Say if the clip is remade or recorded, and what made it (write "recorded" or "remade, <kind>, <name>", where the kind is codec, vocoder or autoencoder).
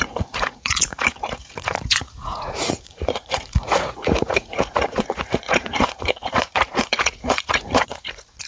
remade, vocoder, Vocos